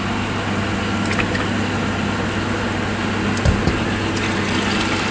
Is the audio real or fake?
real